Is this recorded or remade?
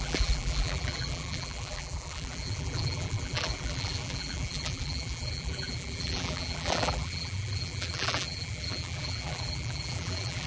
remade